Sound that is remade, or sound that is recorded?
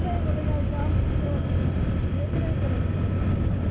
recorded